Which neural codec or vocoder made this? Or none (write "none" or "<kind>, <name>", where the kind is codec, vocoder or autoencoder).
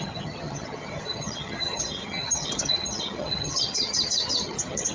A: vocoder, HiFi-GAN